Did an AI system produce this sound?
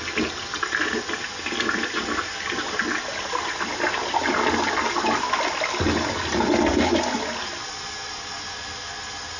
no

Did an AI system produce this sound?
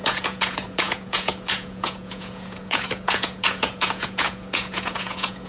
yes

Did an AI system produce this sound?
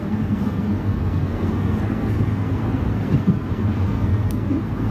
yes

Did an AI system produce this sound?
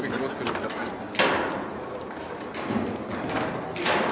no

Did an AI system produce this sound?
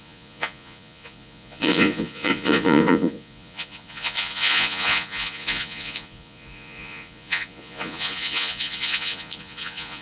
yes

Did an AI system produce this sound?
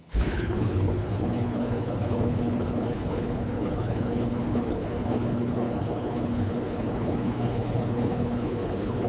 yes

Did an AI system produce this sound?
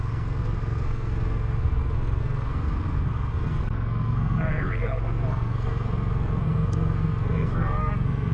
yes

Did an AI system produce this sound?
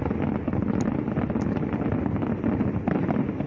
no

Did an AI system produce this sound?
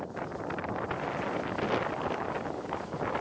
no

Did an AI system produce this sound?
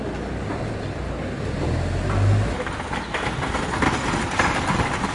no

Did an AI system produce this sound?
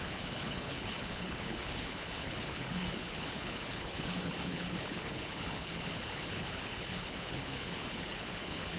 yes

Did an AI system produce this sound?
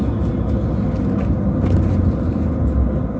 no